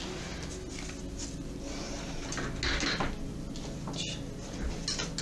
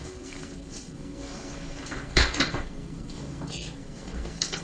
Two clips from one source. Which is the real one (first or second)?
first